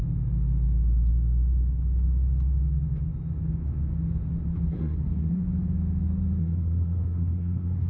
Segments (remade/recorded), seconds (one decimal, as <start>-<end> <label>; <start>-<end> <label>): 0.0-4.7 recorded; 4.7-5.4 remade; 5.4-6.4 recorded; 6.4-7.9 remade